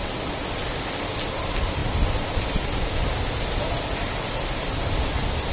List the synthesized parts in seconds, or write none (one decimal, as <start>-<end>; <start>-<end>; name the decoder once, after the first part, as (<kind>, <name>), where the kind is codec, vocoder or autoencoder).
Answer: none